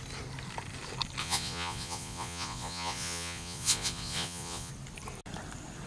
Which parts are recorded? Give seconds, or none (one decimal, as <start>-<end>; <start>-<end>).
0.0-1.2; 4.7-5.9